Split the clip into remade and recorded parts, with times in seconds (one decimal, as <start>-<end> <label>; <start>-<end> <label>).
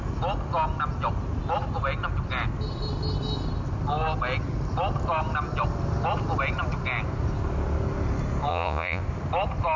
0.0-8.5 recorded; 8.5-9.0 remade; 9.0-9.8 recorded